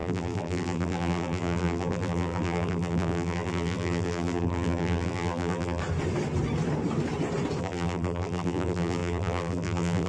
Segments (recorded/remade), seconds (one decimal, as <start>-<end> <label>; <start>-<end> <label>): 0.0-5.8 remade; 5.8-7.6 recorded; 7.6-10.1 remade